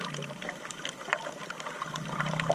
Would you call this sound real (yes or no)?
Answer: yes